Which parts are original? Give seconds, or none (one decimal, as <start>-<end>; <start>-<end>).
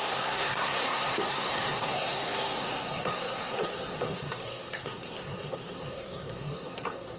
none